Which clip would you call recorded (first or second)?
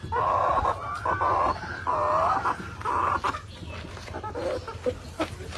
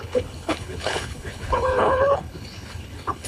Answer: first